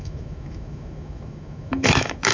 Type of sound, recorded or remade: remade